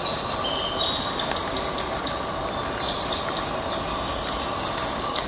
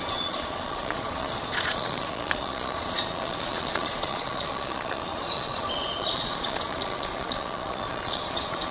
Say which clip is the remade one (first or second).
second